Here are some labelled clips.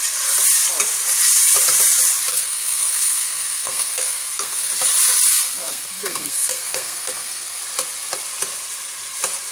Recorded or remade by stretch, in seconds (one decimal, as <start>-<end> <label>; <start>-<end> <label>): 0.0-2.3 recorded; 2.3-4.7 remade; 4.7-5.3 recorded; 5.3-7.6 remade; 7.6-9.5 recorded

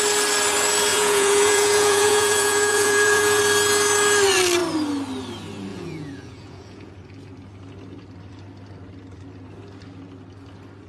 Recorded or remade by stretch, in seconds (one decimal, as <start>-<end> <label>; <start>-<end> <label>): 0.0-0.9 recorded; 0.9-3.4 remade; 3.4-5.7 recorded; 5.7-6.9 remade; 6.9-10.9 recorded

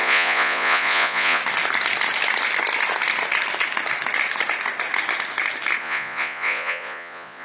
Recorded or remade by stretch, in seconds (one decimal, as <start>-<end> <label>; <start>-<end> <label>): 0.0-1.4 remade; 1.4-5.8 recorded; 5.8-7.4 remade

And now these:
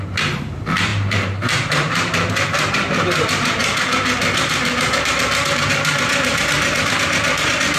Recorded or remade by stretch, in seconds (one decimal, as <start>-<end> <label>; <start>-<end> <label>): 0.0-7.8 remade